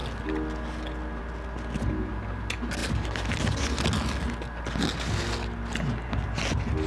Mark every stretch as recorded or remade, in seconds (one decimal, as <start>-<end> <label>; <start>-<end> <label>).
0.0-6.9 recorded